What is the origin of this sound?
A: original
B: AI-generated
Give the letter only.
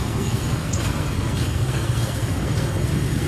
B